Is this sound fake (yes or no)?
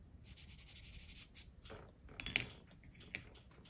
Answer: no